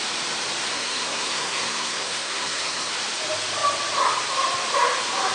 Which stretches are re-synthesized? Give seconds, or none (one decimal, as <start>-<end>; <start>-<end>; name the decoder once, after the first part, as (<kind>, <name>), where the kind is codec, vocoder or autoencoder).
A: 0.7-2.9 (codec, SNAC)